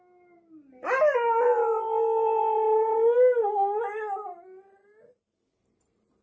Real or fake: real